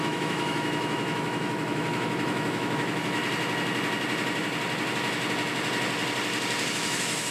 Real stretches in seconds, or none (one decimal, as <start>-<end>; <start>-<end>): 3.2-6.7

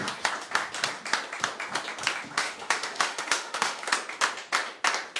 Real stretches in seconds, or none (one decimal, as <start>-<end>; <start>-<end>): 0.0-2.4; 3.9-5.2

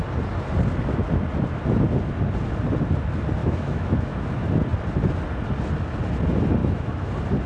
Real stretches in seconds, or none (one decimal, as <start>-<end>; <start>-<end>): 0.0-3.4; 4.2-6.6; 7.1-7.5

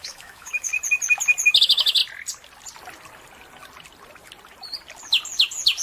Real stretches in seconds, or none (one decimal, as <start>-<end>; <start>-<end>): 0.7-1.6; 2.0-5.8

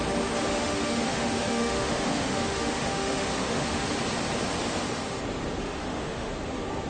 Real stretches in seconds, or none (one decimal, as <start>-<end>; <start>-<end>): 0.0-0.5; 3.9-5.6; 6.3-6.9